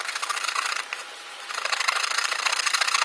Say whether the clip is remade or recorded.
remade